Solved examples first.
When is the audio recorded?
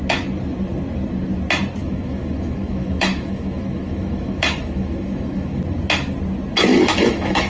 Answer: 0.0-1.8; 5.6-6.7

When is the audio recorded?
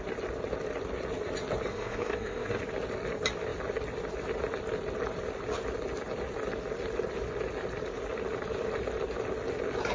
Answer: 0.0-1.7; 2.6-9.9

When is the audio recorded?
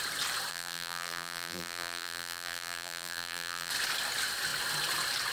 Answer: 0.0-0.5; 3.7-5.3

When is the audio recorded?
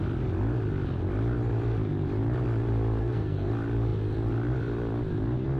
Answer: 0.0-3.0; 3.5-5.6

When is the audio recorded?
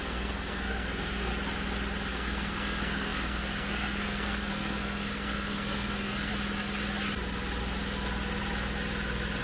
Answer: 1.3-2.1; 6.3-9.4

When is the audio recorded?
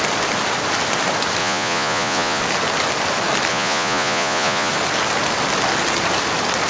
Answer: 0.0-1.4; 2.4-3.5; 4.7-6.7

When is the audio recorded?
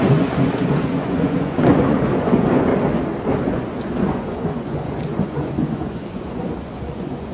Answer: 2.7-3.4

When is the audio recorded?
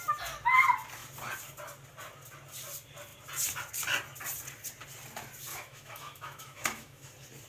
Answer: 0.0-5.5; 7.1-7.5